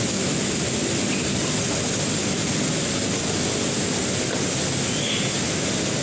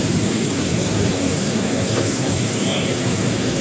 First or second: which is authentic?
first